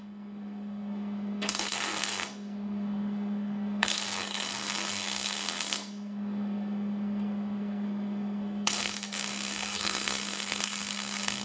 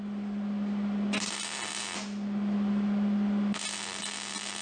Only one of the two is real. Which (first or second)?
second